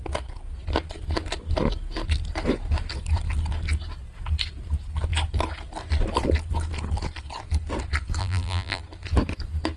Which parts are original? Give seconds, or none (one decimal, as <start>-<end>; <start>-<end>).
0.0-8.2; 8.8-9.8